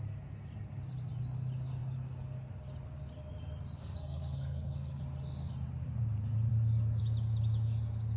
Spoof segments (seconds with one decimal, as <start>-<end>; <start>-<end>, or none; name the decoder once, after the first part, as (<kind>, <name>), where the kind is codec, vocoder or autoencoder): 3.8-5.0 (codec, SNAC)